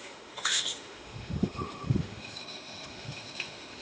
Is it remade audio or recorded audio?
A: remade